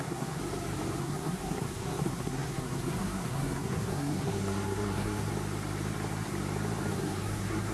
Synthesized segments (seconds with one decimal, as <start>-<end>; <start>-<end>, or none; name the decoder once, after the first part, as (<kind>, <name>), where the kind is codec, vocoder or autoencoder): 0.0-0.4 (codec, SNAC); 1.0-5.3; 6.9-7.7